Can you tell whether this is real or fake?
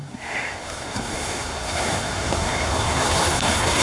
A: fake